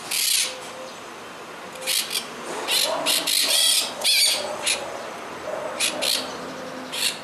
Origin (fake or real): real